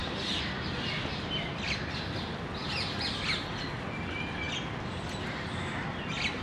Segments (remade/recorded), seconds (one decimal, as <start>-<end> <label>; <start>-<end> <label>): 0.0-6.4 recorded